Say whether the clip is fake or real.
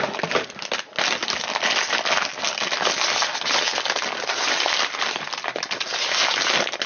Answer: real